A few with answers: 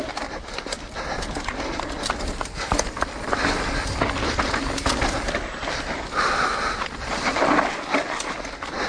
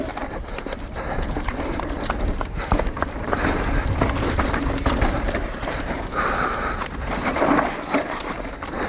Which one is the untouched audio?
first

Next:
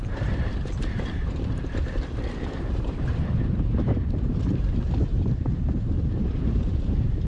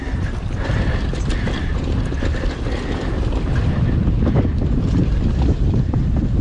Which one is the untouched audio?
second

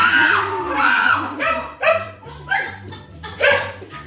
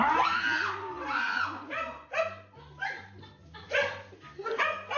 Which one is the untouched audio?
second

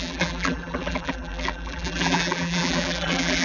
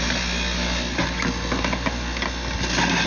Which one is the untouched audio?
second